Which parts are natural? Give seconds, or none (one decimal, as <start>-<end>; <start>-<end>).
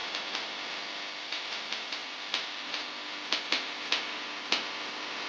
0.0-5.3